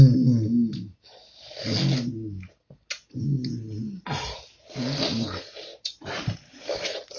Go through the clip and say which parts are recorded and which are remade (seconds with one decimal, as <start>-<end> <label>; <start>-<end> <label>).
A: 0.0-5.7 recorded; 5.7-7.2 remade